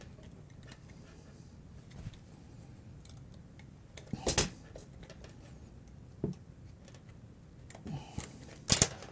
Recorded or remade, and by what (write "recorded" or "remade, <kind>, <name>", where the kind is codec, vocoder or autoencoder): recorded